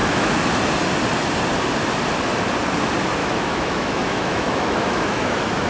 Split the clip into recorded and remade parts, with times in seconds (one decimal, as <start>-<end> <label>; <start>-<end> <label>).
0.0-0.5 remade; 0.5-3.2 recorded; 3.2-5.7 remade